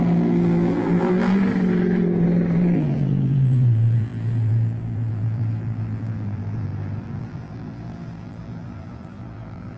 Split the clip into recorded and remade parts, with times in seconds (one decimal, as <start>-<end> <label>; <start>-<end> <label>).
0.0-1.4 remade; 1.4-2.6 recorded; 2.6-9.8 remade